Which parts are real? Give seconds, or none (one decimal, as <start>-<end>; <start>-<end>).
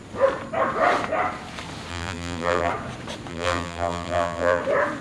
0.0-1.9; 2.7-3.3; 4.6-5.0